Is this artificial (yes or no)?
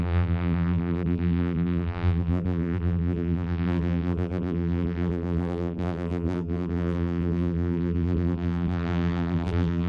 yes